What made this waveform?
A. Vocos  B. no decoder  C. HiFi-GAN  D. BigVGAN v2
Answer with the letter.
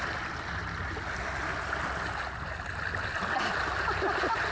B